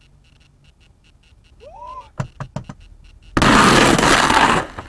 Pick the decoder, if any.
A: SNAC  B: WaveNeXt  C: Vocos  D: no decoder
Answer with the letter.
D